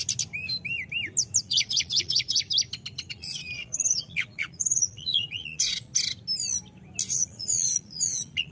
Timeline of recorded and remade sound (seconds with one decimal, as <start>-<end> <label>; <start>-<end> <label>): 0.0-1.4 recorded; 1.4-2.4 remade; 2.4-3.1 recorded; 3.1-5.9 remade; 5.9-7.1 recorded; 7.1-8.5 remade